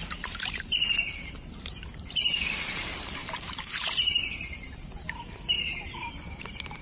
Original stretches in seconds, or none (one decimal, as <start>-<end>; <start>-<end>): none